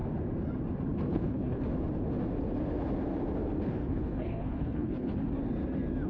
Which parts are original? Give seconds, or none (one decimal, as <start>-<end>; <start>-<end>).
0.0-1.1; 1.6-3.8; 5.2-6.1